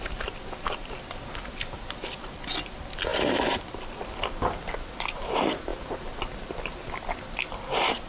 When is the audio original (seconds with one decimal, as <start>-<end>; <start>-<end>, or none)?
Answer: 0.0-8.1